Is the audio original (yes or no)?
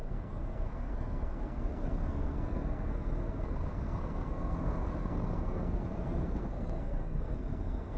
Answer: no